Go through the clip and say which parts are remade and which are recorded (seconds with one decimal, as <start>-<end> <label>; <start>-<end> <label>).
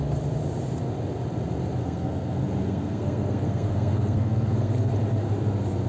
0.0-1.8 recorded; 1.8-4.9 remade; 4.9-5.9 recorded